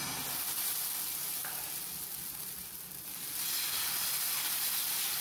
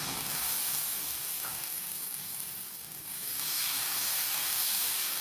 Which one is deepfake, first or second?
second